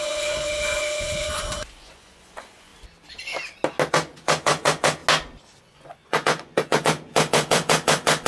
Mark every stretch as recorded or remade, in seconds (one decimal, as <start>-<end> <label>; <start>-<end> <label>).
0.0-2.7 remade; 2.7-3.9 recorded; 3.9-5.0 remade; 5.0-5.6 recorded; 5.6-8.3 remade